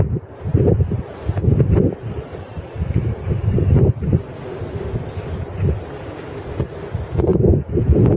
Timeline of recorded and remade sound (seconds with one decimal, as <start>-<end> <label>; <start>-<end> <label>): 0.0-7.3 recorded; 7.3-8.2 remade